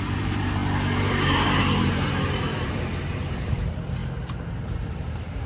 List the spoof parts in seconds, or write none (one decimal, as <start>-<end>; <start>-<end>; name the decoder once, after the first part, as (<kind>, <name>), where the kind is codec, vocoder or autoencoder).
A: 0.0-0.6 (vocoder, BigVGAN v2); 1.1-4.0; 4.6-5.5